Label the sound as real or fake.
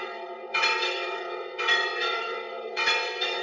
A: fake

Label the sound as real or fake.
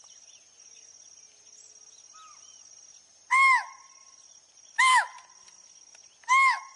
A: real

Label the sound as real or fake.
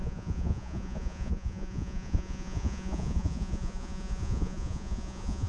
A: fake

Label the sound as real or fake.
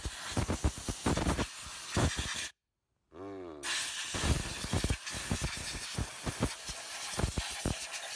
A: real